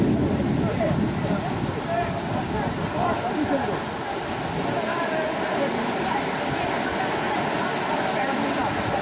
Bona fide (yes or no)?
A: yes